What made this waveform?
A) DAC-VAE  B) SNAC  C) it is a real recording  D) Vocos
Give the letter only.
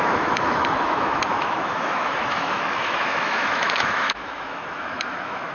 A